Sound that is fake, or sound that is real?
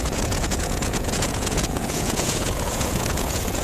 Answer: fake